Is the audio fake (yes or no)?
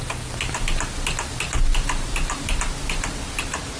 no